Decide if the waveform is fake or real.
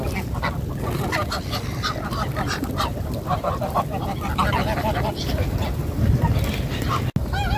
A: real